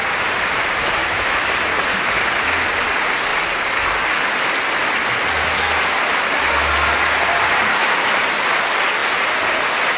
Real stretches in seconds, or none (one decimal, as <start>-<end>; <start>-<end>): 0.0-1.0; 1.5-10.0

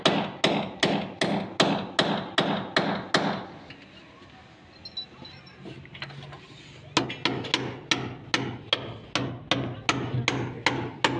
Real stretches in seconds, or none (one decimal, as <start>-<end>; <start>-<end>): 0.0-11.2

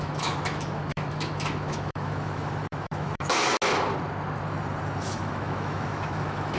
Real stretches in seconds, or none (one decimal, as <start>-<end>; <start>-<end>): 3.5-5.0

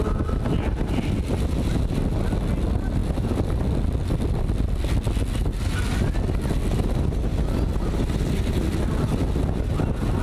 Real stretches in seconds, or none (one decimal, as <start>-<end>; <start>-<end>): 0.0-10.2

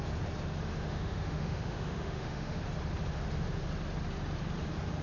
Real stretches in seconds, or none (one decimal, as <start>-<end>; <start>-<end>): 0.0-0.7; 2.6-5.0

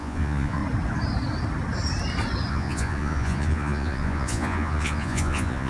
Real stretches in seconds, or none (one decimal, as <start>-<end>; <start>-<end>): 0.6-2.5